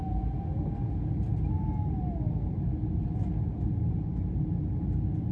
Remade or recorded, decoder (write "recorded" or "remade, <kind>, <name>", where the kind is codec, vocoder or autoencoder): recorded